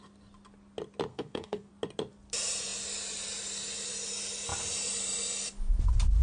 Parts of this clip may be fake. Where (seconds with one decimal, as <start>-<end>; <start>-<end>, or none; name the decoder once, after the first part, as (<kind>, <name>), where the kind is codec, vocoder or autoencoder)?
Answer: 1.1-1.7 (codec, SNAC)